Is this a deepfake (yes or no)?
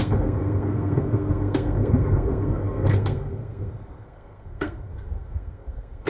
yes